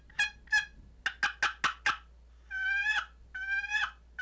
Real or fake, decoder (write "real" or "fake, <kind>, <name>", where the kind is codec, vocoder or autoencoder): real